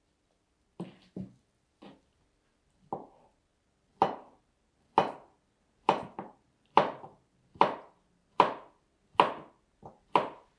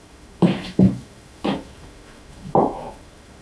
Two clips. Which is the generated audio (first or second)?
second